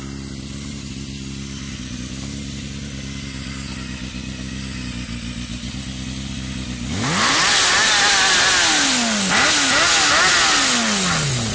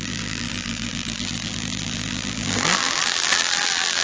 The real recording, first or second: first